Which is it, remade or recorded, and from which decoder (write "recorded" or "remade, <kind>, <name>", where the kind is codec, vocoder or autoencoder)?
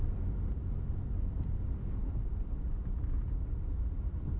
recorded